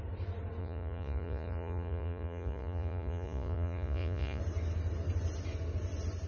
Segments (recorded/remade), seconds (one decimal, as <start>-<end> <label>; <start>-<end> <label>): 0.0-0.6 recorded; 0.6-4.4 remade; 4.4-6.3 recorded